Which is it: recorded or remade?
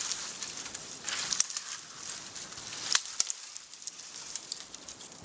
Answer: remade